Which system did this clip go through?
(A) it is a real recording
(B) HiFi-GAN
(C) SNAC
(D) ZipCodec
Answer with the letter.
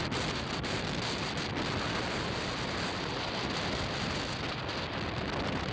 A